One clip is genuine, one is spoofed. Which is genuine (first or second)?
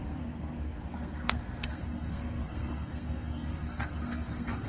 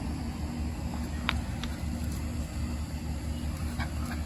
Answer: second